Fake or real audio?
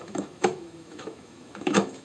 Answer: fake